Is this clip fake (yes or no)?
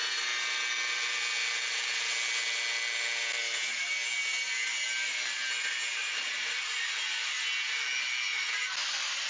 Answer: no